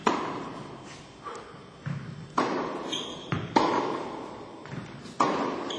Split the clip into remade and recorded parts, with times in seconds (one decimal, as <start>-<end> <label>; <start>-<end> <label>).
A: 0.0-5.8 recorded